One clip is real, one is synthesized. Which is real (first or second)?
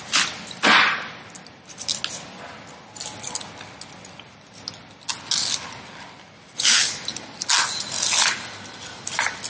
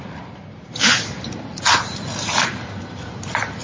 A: first